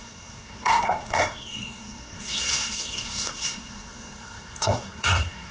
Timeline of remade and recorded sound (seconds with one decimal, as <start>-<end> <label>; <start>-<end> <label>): 0.0-5.5 remade